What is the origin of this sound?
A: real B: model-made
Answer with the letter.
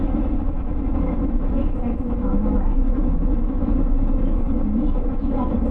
B